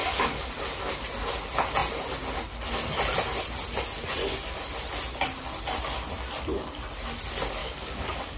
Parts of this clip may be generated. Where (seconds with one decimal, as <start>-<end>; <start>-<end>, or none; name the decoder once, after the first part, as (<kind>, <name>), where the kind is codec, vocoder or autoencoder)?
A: 0.0-0.5 (codec, DAC); 7.6-8.4